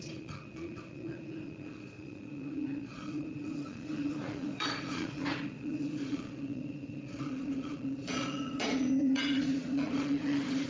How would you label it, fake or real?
fake